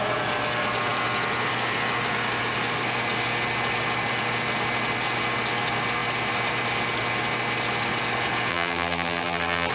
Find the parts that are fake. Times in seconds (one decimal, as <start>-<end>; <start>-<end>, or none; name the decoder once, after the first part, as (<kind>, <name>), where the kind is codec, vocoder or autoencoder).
8.5-9.7 (vocoder, BigVGAN v2)